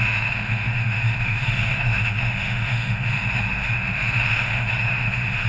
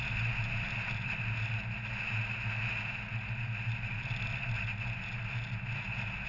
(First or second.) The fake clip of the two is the first